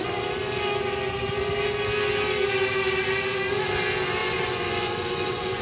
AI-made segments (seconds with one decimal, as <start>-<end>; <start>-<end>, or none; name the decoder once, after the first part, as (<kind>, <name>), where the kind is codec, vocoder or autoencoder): 4.2-5.6 (vocoder, Vocos)